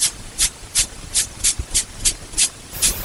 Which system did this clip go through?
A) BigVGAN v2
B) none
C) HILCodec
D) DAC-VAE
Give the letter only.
B